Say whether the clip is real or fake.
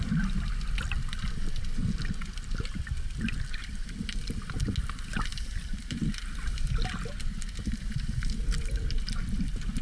real